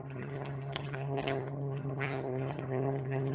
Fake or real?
fake